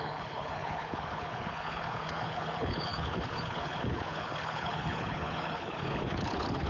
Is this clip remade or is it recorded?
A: remade